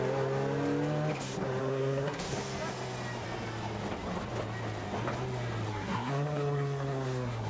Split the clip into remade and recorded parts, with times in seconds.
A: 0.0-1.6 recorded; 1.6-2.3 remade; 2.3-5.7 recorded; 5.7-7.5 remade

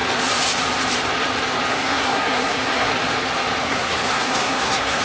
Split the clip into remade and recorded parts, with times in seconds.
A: 0.0-1.7 recorded; 1.7-2.9 remade; 2.9-3.6 recorded; 3.6-5.0 remade

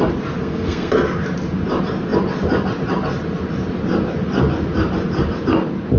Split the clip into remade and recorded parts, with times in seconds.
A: 0.0-0.4 recorded; 0.4-0.9 remade; 0.9-6.0 recorded

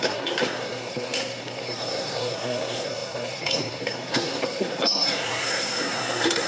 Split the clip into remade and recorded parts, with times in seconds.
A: 0.0-6.5 remade

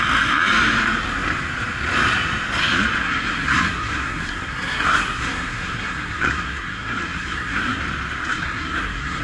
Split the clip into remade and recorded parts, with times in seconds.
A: 0.0-3.0 recorded; 3.0-7.8 remade; 7.8-8.2 recorded; 8.2-9.2 remade

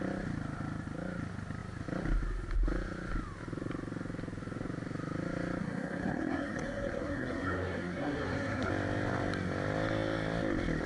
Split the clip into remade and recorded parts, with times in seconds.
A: 0.0-5.6 recorded; 5.6-8.7 remade; 8.7-10.9 recorded

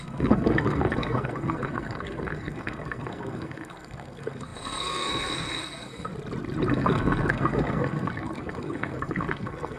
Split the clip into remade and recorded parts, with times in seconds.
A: 0.0-6.1 remade; 6.1-6.7 recorded; 6.7-9.8 remade